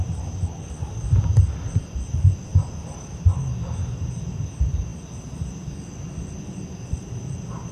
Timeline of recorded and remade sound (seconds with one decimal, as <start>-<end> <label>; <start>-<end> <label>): 0.0-7.7 recorded